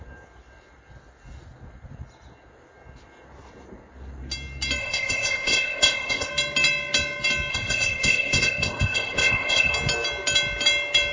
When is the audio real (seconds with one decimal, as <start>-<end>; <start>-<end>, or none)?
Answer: 0.0-4.8; 6.3-7.5; 9.7-11.1